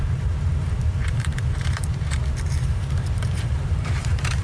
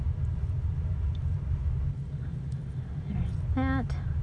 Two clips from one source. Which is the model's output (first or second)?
first